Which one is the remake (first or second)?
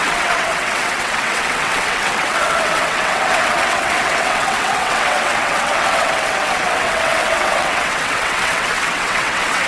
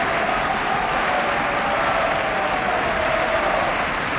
first